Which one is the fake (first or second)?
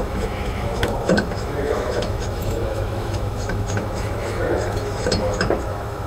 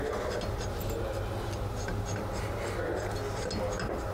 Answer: first